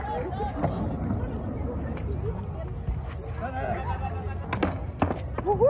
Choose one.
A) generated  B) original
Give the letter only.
B